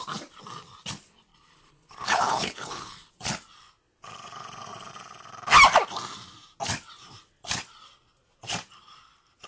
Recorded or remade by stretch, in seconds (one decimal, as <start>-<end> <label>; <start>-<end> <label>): 0.0-1.3 recorded; 1.3-3.1 remade; 3.1-9.5 recorded